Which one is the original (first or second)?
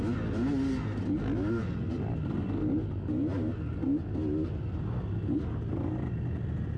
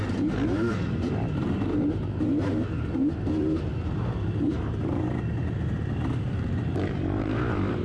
first